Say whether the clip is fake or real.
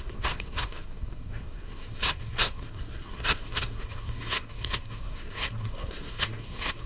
fake